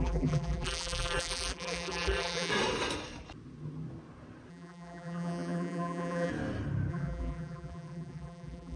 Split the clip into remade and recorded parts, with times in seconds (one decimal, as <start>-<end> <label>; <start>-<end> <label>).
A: 0.0-2.5 remade; 2.5-4.5 recorded; 4.5-6.3 remade; 6.3-6.9 recorded; 6.9-8.8 remade